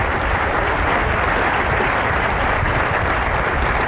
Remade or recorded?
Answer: recorded